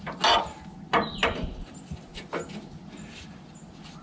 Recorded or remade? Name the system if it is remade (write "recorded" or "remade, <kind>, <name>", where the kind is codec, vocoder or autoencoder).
recorded